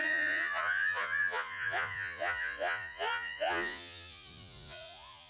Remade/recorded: remade